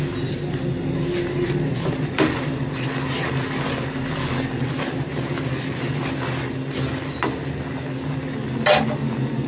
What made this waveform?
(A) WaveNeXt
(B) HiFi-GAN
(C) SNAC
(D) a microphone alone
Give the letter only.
D